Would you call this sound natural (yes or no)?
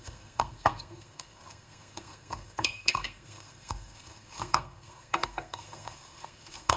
no